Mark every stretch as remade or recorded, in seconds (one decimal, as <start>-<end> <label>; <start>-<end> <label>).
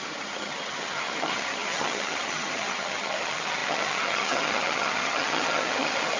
0.0-6.2 remade